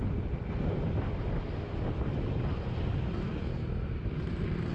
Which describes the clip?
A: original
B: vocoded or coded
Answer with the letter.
A